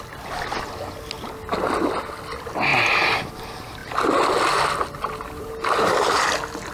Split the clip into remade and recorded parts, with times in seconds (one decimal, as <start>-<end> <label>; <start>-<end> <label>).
0.0-6.7 recorded